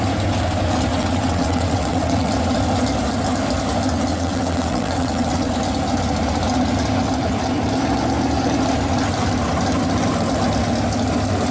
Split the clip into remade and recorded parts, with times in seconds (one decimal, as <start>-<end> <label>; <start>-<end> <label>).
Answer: 0.0-0.9 recorded; 0.9-2.3 remade; 2.3-4.1 recorded; 4.1-5.5 remade; 5.5-11.5 recorded